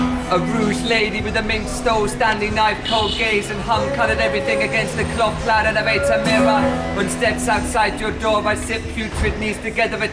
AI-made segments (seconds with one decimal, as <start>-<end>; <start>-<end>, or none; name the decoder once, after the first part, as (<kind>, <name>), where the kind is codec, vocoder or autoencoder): 0.5-1.2 (autoencoder, DAC-VAE); 6.3-7.0